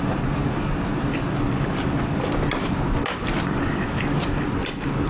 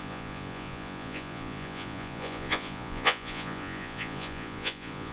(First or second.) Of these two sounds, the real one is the first